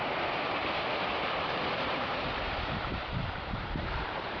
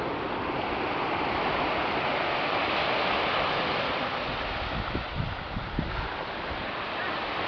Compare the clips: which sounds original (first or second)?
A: second